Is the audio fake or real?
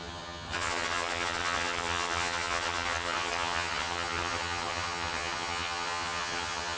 fake